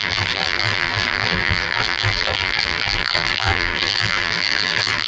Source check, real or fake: fake